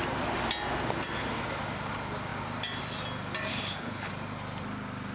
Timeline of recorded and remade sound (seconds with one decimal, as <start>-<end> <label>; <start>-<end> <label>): 0.0-3.5 recorded; 3.5-4.1 remade; 4.1-5.1 recorded